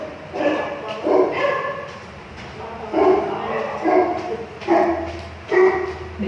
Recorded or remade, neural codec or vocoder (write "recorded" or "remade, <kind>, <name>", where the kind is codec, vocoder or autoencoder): recorded